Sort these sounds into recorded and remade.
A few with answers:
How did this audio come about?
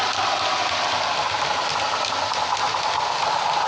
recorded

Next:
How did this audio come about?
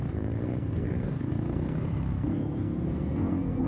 remade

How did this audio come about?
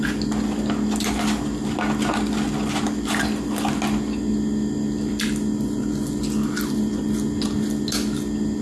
recorded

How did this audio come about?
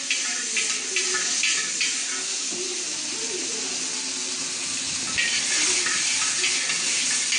recorded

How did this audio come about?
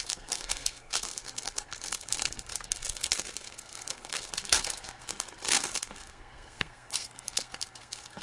remade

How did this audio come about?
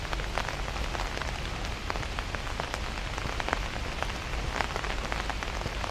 recorded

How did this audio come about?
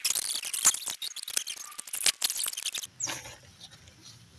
recorded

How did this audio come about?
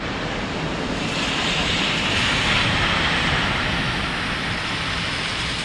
recorded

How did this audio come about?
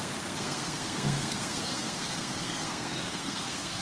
remade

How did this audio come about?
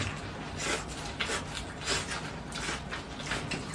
recorded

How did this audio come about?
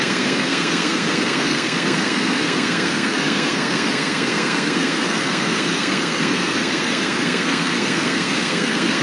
remade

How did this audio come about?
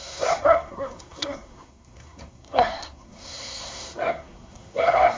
remade